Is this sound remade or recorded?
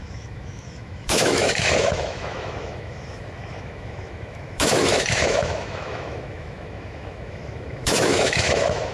remade